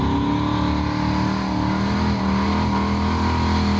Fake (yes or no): no